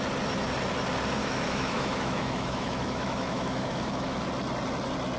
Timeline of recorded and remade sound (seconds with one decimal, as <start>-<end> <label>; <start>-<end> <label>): 0.0-1.2 recorded; 1.2-4.3 remade; 4.3-5.2 recorded